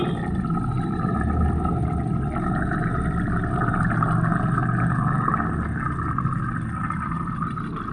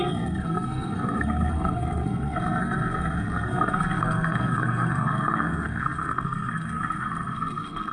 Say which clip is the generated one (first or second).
second